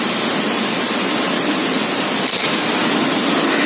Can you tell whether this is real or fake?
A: real